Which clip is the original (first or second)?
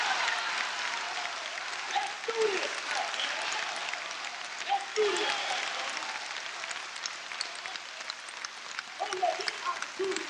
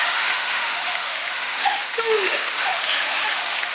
first